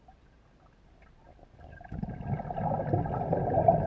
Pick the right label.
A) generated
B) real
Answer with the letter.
B